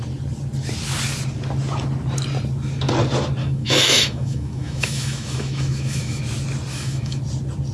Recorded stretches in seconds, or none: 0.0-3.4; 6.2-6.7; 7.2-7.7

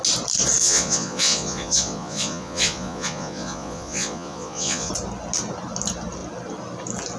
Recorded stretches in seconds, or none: 0.0-0.6; 4.9-7.2